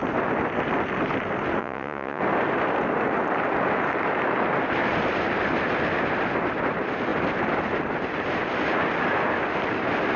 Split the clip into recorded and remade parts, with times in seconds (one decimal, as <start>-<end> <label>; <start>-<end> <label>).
0.0-1.6 recorded; 1.6-2.2 remade; 2.2-10.2 recorded